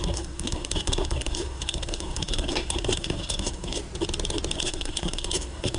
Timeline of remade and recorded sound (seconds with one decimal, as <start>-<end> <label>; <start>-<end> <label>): 0.0-3.8 remade; 3.8-4.6 recorded; 4.6-5.8 remade